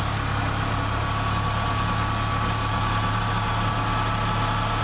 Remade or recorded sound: recorded